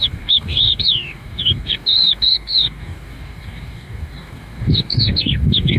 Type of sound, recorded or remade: remade